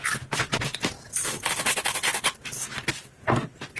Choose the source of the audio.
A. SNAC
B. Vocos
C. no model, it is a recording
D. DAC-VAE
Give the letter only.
C